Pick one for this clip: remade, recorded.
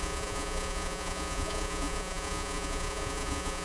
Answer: remade